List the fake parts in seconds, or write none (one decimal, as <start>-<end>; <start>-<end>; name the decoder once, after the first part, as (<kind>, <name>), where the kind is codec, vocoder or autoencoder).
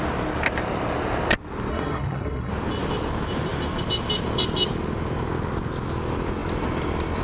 1.7-2.5 (codec, SNAC)